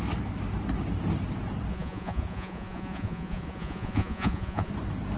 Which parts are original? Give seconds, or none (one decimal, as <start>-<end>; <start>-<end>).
0.0-1.7; 4.7-5.2